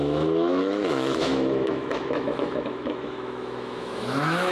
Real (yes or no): no